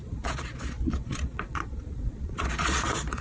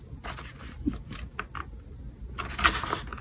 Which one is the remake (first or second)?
first